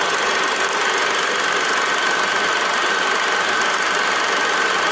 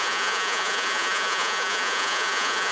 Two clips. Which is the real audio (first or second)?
first